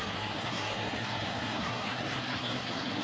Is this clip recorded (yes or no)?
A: no